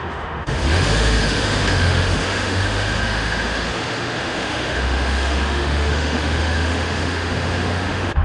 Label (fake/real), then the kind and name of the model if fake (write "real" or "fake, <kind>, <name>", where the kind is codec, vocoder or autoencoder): fake, autoencoder, DAC-VAE